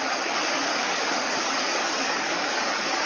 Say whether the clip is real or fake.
fake